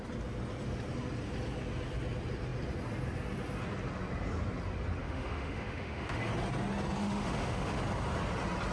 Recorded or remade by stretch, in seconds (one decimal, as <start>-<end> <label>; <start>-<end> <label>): 0.0-5.0 recorded; 5.0-6.2 remade; 6.2-7.0 recorded; 7.0-7.8 remade; 7.8-8.7 recorded

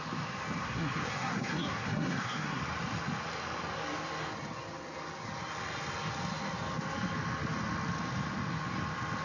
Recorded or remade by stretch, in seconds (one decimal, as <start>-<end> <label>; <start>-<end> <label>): 0.0-0.6 recorded; 0.6-2.6 remade; 2.6-9.2 recorded

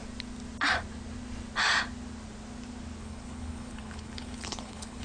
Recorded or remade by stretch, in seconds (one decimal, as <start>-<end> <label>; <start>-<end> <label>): 0.0-3.0 recorded; 3.0-5.0 remade

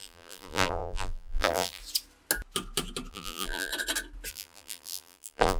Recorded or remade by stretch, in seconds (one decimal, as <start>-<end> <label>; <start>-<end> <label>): 0.0-1.8 remade; 1.8-3.1 recorded; 3.1-3.7 remade; 3.7-4.3 recorded; 4.3-5.6 remade

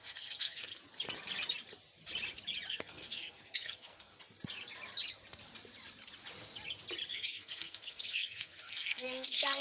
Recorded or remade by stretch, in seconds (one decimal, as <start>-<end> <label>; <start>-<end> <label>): 0.0-0.8 remade; 0.8-2.7 recorded; 2.7-4.1 remade; 4.1-7.1 recorded; 7.1-9.6 remade

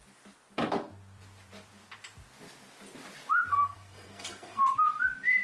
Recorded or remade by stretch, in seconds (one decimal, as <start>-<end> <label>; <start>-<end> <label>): 0.0-3.5 recorded; 3.5-4.6 remade; 4.6-5.4 recorded

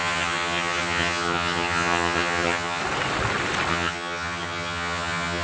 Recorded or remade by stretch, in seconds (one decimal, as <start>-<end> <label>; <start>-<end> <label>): 0.0-2.8 remade; 2.8-3.7 recorded; 3.7-5.4 remade

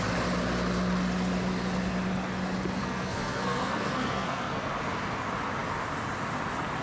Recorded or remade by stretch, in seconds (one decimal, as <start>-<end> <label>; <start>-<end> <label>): 0.0-2.8 recorded; 2.8-4.7 remade; 4.7-6.8 recorded